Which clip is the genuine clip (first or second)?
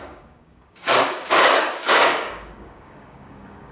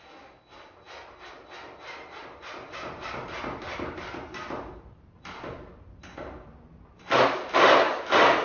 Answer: second